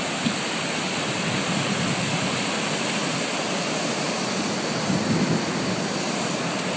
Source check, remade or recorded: recorded